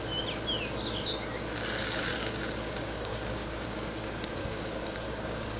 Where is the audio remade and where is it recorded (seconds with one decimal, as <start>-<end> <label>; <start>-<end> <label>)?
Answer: 0.0-2.1 recorded; 2.1-5.6 remade